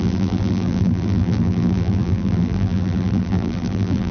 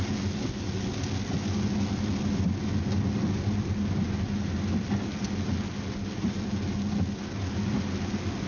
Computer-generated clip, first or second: first